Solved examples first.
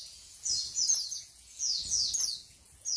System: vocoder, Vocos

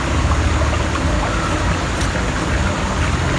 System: none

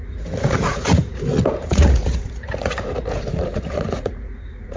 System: vocoder, Vocos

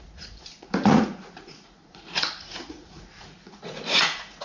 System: vocoder, Vocos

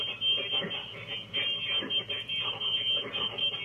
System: none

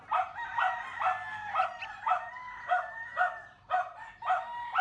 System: none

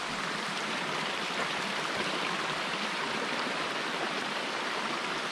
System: vocoder, BigVGAN v2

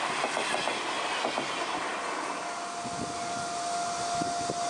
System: none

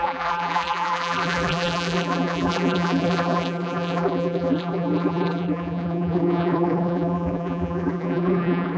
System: vocoder, BigVGAN v2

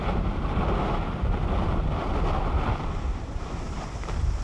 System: none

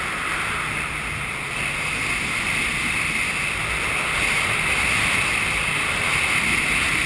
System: none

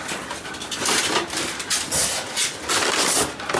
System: none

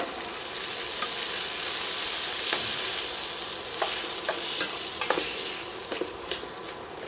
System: none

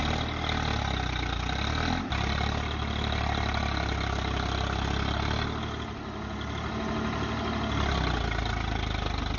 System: none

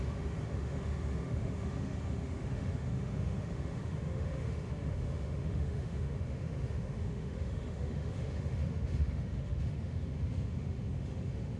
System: autoencoder, DAC-VAE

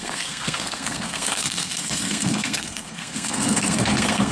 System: codec, SNAC